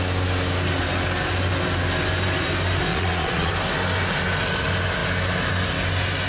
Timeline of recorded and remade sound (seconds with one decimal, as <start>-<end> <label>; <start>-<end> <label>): 0.0-2.9 recorded; 2.9-3.5 remade; 3.5-6.3 recorded